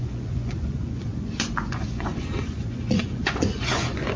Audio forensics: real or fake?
fake